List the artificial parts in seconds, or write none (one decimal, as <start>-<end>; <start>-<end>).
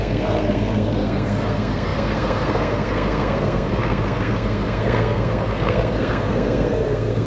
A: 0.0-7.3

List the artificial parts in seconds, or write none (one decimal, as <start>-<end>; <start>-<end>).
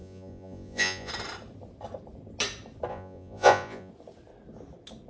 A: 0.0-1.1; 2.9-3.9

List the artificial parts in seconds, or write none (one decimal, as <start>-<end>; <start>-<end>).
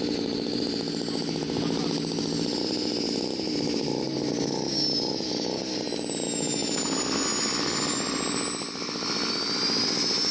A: none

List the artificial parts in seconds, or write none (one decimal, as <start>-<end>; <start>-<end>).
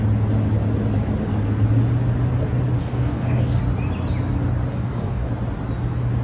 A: 2.8-3.6; 4.7-5.3